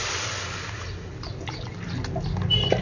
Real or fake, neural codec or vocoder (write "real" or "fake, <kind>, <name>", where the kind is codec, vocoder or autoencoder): real